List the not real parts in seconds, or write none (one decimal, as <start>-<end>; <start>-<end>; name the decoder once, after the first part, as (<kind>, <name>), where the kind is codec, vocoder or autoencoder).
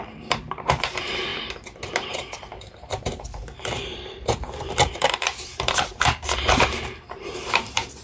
0.0-1.3 (vocoder, BigVGAN v2); 2.1-8.0